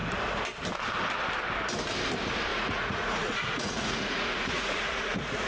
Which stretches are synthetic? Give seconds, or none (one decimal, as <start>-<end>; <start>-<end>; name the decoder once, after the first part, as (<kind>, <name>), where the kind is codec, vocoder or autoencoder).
2.5-5.5 (vocoder, Vocos)